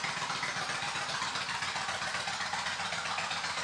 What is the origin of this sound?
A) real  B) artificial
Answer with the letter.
A